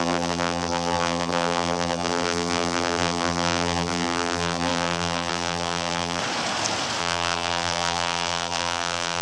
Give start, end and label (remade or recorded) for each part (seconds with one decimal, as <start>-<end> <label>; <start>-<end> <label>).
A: 0.0-6.2 remade; 6.2-7.0 recorded; 7.0-9.2 remade